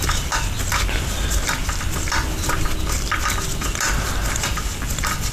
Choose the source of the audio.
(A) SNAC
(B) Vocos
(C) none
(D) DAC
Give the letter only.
C